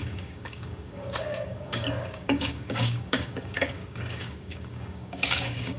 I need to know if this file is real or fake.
fake